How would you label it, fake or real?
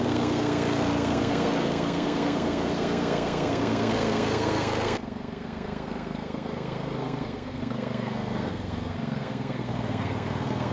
fake